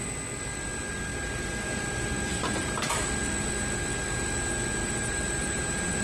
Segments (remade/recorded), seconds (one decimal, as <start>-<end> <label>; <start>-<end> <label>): 0.0-2.3 recorded; 2.3-3.1 remade; 3.1-4.8 recorded; 4.8-6.0 remade